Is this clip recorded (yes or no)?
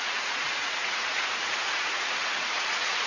no